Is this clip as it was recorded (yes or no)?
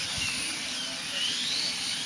yes